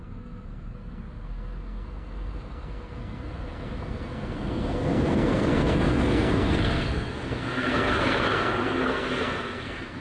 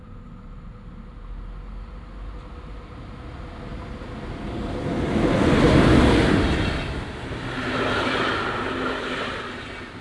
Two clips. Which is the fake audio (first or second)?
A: first